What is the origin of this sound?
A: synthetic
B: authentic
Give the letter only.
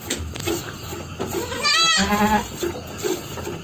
B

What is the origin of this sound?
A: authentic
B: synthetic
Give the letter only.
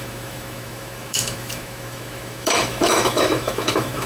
B